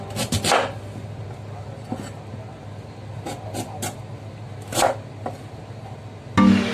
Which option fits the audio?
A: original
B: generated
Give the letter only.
A